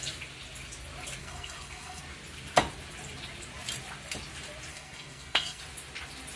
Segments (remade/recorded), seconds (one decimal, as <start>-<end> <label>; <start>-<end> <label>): 0.0-1.2 recorded; 1.2-2.0 remade; 2.0-4.7 recorded; 4.7-5.6 remade; 5.6-6.4 recorded